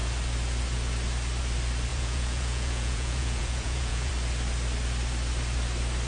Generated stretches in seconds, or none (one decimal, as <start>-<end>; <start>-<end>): 1.9-4.1